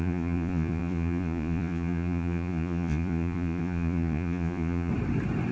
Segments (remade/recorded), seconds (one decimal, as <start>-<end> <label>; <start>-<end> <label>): 0.0-4.9 remade; 4.9-5.5 recorded